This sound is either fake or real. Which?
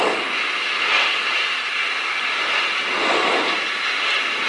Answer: real